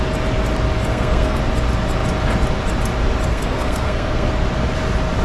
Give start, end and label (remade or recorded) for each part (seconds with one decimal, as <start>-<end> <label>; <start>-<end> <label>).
0.0-0.9 recorded; 0.9-1.4 remade; 1.4-3.3 recorded; 3.3-4.3 remade; 4.3-5.2 recorded